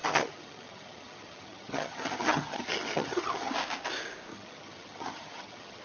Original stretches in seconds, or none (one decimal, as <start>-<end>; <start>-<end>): 3.5-4.3